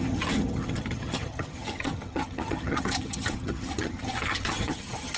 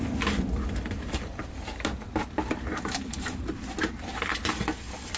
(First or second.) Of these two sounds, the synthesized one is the first